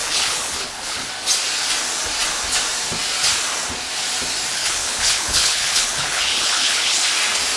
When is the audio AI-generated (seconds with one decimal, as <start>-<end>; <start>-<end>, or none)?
0.0-1.1; 4.5-7.0